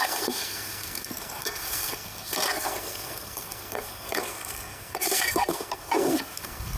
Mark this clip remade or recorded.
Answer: remade